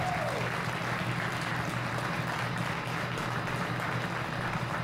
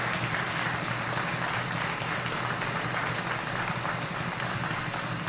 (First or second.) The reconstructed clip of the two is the second